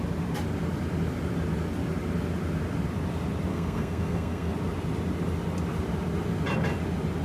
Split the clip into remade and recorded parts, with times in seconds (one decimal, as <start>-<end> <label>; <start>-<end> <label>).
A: 0.0-3.5 recorded; 3.5-4.5 remade; 4.5-7.2 recorded